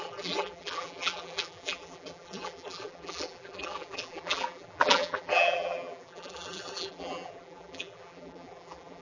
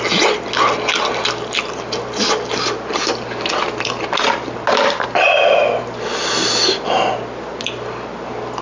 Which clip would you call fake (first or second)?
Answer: first